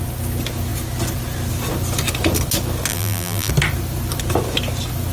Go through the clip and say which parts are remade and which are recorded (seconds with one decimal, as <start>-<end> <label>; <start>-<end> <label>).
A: 0.0-2.9 recorded; 2.9-3.5 remade; 3.5-5.1 recorded